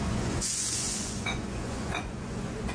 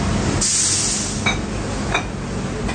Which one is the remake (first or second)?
first